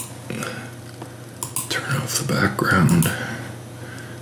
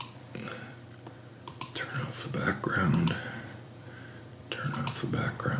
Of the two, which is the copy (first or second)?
second